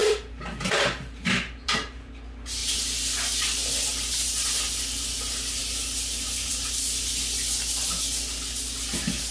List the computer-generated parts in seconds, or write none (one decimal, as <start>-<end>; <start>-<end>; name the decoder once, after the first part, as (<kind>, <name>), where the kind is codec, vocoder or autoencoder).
0.0-2.1 (vocoder, BigVGAN v2)